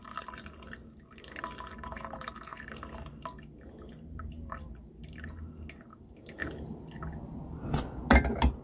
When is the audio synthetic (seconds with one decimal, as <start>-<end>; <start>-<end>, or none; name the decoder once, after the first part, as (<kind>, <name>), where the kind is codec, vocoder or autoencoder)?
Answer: none